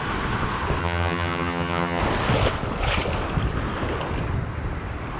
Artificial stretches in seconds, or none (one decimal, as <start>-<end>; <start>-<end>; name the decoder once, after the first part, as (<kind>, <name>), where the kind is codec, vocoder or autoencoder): 0.8-2.0 (vocoder, HiFi-GAN)